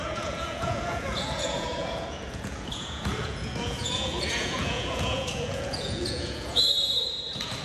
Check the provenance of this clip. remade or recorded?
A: remade